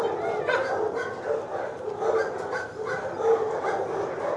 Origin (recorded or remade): recorded